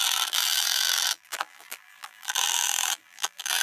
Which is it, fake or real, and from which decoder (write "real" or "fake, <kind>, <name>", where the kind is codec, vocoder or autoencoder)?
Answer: fake, vocoder, BigVGAN v2